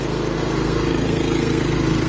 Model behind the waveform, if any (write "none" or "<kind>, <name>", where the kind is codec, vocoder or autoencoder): codec, SNAC